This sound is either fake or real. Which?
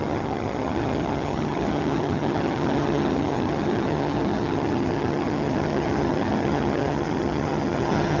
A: fake